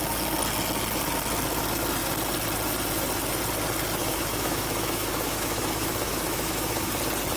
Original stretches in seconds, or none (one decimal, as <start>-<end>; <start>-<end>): 0.0-4.0; 6.9-7.4